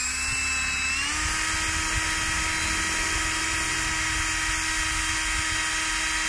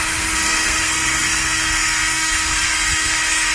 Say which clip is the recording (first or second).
first